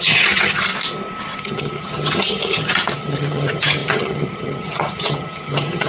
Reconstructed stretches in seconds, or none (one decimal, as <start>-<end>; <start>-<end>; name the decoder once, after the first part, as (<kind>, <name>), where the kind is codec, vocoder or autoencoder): 0.0-0.7 (vocoder, HiFi-GAN); 1.4-5.9